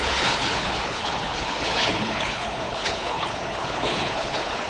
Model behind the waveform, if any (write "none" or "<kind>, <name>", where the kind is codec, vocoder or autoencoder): codec, HILCodec